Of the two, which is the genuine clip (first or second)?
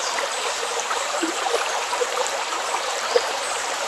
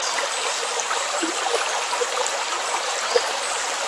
second